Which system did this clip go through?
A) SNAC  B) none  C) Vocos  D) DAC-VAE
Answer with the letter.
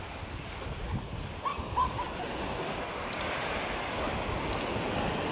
B